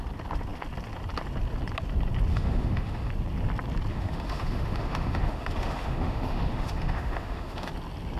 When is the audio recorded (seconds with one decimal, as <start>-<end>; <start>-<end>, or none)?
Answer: 0.0-2.3; 3.1-3.9; 7.7-8.2